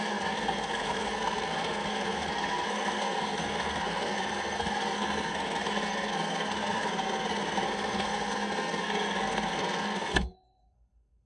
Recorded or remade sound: remade